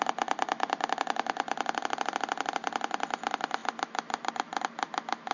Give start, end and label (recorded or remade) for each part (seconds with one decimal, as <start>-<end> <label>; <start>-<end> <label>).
0.0-5.3 recorded

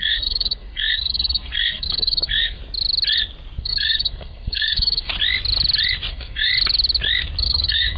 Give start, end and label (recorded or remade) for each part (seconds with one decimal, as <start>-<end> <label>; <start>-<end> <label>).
0.0-2.6 remade; 2.6-3.6 recorded; 3.6-5.1 remade; 5.1-6.1 recorded; 6.1-6.5 remade; 6.5-7.4 recorded; 7.4-8.0 remade

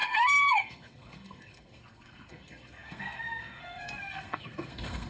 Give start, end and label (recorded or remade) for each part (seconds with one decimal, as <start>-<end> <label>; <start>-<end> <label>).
0.0-5.1 remade

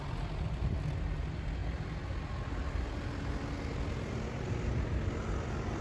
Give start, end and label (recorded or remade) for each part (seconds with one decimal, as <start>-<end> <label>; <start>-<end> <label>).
0.0-5.8 recorded